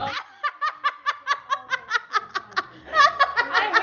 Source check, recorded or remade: recorded